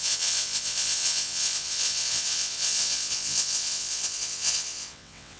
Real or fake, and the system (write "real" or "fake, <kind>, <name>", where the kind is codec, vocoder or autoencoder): fake, vocoder, WaveNeXt